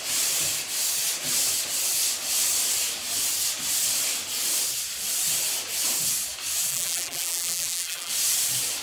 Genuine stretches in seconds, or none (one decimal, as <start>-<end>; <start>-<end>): 0.0-6.7; 8.1-8.8